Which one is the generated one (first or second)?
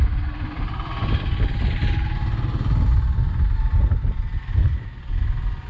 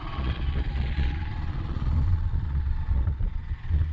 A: second